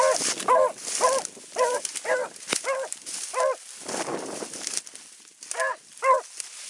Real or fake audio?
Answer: real